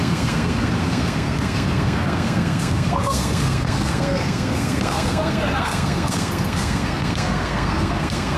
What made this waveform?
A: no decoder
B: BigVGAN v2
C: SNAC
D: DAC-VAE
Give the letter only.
C